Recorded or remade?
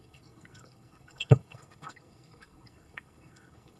remade